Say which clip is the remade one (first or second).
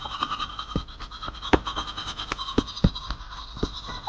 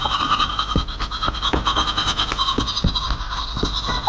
first